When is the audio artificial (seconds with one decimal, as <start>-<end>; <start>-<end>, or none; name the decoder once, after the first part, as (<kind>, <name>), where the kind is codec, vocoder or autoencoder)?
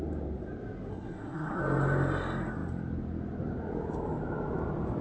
0.9-1.6 (codec, SNAC)